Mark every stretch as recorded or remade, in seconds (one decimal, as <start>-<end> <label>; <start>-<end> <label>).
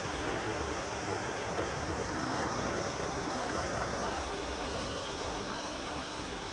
0.0-6.5 remade